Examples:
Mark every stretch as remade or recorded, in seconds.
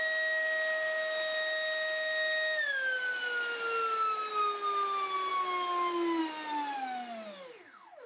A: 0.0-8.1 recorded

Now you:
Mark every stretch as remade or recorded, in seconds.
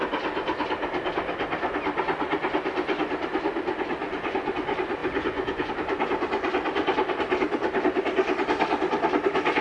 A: 0.0-4.0 recorded; 4.0-4.5 remade; 4.5-5.0 recorded; 5.0-5.7 remade; 5.7-9.6 recorded